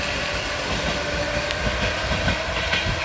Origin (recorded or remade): recorded